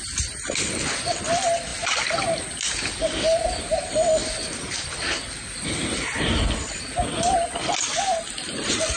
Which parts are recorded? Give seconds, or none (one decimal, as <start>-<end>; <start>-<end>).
0.0-9.0